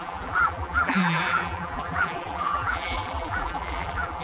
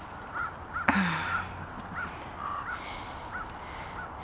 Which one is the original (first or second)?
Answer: second